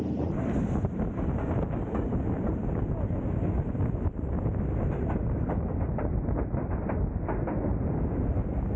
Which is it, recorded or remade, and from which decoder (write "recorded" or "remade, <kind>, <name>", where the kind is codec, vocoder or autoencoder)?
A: recorded